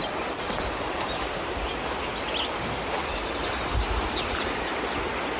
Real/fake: real